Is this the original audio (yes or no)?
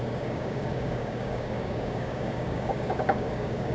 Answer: no